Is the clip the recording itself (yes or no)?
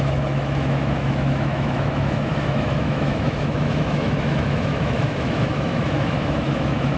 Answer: no